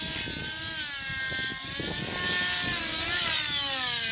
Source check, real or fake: real